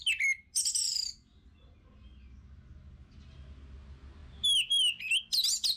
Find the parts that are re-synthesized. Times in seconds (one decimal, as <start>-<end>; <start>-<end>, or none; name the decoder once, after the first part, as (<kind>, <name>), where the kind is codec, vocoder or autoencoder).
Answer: none